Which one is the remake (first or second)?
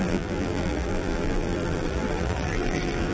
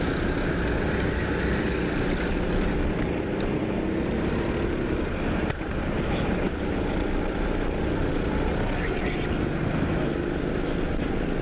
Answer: first